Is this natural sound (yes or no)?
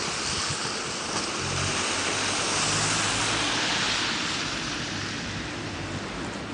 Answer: yes